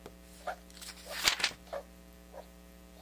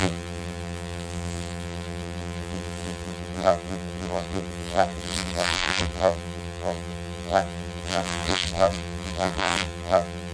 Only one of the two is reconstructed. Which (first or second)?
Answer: second